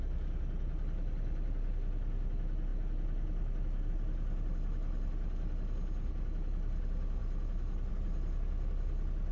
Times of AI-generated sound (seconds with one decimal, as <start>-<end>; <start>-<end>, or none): none